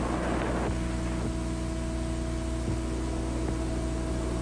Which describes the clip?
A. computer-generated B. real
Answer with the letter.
B